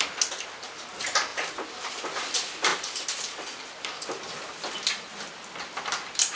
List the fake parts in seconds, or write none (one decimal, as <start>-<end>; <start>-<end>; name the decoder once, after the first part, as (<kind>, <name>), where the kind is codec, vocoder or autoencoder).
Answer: none